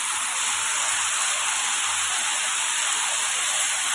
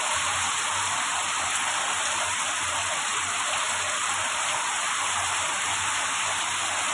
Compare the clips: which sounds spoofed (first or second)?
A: second